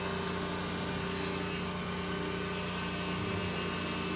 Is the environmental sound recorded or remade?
recorded